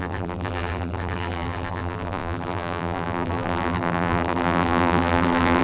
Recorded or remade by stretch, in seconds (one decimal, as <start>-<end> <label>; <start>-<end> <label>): 0.0-5.6 remade